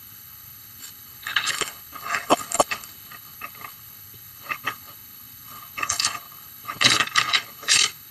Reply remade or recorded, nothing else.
remade